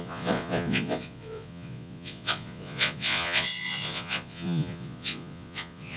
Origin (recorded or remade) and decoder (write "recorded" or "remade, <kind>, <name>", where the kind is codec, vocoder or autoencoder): remade, vocoder, Vocos